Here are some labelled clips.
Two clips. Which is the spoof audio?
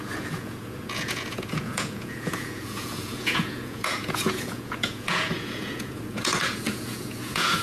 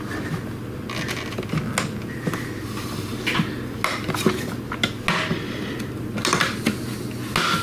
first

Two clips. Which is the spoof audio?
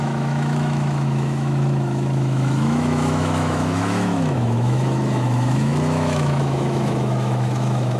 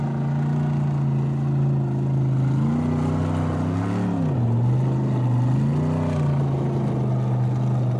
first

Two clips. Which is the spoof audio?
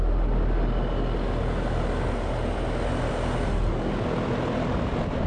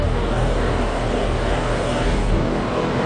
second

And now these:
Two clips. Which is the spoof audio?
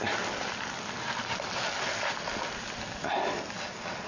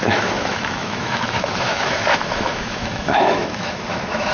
second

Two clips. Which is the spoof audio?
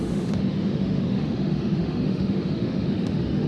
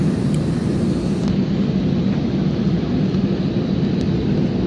first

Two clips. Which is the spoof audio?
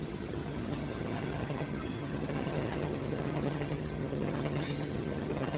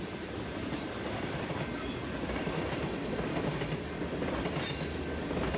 first